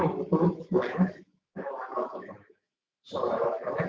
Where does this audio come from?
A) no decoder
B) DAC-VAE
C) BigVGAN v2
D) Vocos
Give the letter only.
B